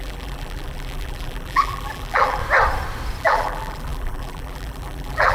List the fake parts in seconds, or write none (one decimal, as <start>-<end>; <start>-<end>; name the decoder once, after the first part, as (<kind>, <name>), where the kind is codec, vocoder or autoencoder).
0.0-2.4 (vocoder, BigVGAN v2); 3.2-5.3